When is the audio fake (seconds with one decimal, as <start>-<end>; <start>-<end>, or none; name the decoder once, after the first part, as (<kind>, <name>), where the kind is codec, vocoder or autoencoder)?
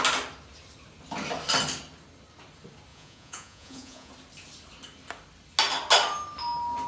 2.9-4.1 (vocoder, Vocos)